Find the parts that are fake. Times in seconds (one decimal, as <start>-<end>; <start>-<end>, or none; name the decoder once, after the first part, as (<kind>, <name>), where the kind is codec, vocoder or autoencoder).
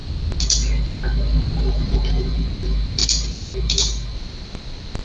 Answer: 1.7-3.0 (vocoder, BigVGAN v2); 3.6-5.0